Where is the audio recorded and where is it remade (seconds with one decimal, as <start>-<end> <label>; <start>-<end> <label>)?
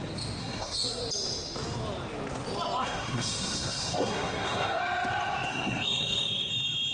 0.0-0.4 recorded; 0.4-1.0 remade; 1.0-2.8 recorded; 2.8-4.8 remade; 4.8-5.5 recorded; 5.5-6.5 remade; 6.5-6.9 recorded